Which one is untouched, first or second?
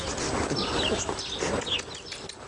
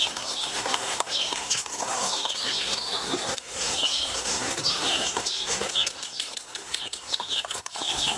first